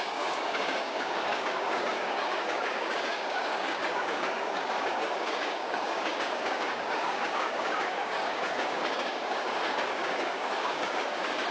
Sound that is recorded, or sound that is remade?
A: remade